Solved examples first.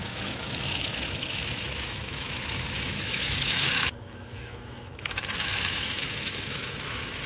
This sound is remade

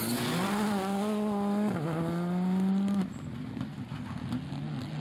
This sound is recorded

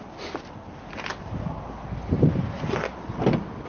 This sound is recorded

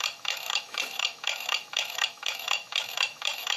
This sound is remade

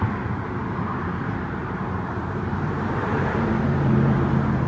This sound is remade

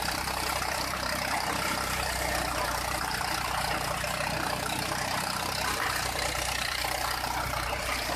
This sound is remade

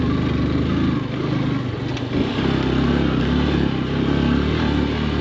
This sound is recorded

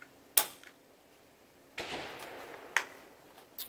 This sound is recorded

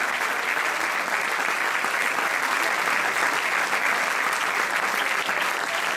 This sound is recorded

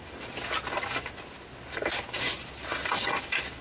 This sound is recorded